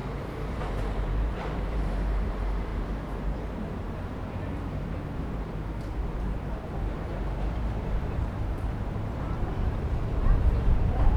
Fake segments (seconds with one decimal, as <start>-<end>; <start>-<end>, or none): 0.6-11.2